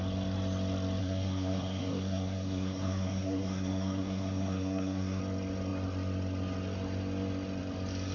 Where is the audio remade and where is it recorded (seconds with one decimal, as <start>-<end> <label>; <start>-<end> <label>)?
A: 0.0-1.0 recorded; 1.0-5.2 remade; 5.2-8.1 recorded